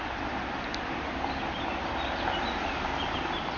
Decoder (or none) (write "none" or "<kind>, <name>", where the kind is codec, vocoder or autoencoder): none